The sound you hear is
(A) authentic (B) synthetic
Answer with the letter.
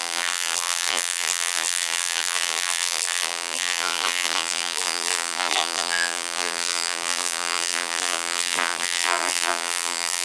B